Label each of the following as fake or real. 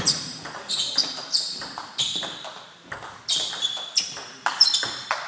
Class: fake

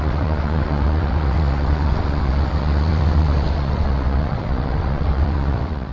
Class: fake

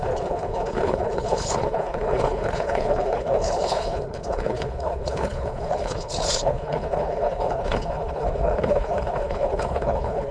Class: fake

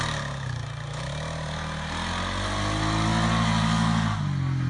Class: real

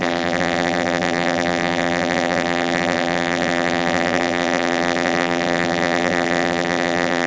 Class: fake